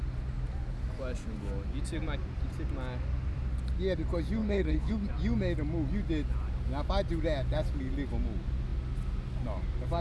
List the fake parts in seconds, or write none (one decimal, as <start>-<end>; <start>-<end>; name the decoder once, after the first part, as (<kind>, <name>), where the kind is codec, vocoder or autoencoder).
4.4-4.9 (codec, HILCodec)